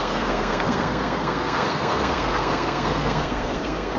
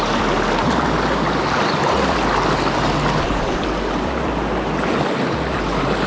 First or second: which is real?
second